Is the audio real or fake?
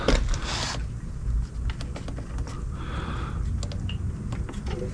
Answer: real